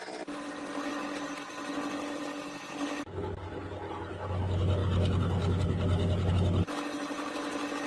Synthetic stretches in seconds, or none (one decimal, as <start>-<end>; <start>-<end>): none